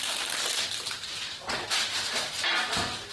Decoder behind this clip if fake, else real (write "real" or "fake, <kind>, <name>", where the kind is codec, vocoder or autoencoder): real